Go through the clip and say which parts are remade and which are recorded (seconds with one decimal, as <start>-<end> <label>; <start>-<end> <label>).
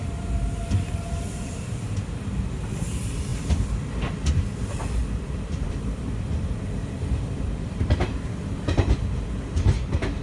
0.0-3.3 recorded; 3.3-4.1 remade; 4.1-5.0 recorded; 5.0-8.4 remade; 8.4-10.2 recorded